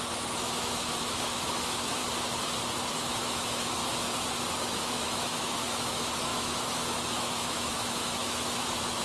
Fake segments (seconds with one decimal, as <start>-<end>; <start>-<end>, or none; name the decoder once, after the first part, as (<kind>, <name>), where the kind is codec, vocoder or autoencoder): 0.0-2.0 (autoencoder, DAC-VAE); 2.9-3.8; 4.5-9.0